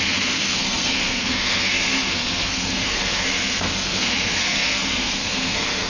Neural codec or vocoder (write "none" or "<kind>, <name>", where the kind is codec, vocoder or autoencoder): codec, SNAC